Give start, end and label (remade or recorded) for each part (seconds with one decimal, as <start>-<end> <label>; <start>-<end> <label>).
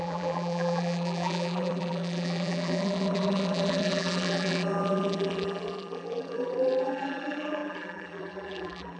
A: 0.0-9.0 remade